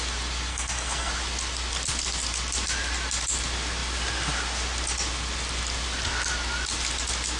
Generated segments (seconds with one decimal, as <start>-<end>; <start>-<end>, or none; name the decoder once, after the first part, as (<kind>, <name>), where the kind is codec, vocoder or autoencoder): 0.5-1.1 (codec, SNAC)